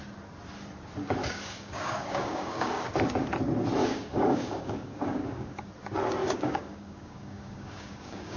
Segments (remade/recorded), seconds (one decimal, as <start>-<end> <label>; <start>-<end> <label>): 0.0-1.2 recorded; 1.2-2.9 remade; 2.9-3.8 recorded; 3.8-5.7 remade; 5.7-6.2 recorded; 6.2-8.4 remade